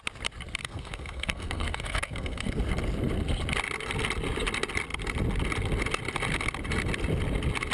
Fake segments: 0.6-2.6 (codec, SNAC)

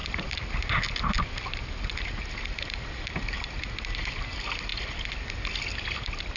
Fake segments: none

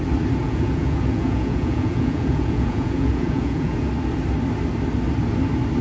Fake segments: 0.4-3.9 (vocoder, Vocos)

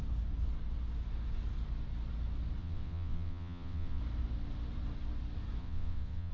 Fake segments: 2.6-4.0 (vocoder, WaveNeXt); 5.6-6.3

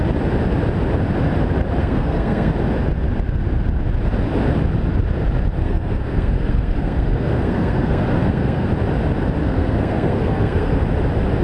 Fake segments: 1.8-2.5 (codec, SNAC); 5.6-8.7; 9.4-10.8